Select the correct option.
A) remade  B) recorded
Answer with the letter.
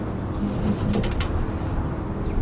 B